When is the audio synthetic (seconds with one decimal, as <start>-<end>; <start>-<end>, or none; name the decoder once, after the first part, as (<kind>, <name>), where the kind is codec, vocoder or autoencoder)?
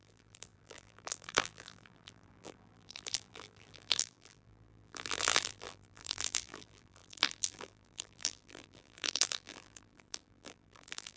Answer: 0.0-11.2 (vocoder, BigVGAN v2)